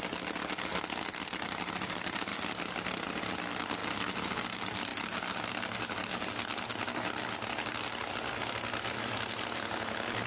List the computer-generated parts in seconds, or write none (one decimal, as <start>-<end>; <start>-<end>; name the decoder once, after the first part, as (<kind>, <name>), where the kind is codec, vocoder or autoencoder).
none